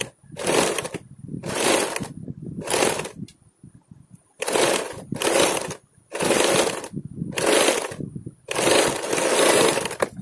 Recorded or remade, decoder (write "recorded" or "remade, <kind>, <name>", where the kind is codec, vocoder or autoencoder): recorded